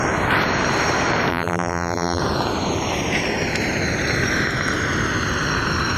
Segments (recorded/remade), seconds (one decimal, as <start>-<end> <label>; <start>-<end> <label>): 0.0-1.3 recorded; 1.3-2.2 remade; 2.2-6.0 recorded